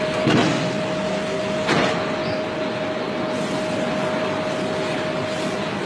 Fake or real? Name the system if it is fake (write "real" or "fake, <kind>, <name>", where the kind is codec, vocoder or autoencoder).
real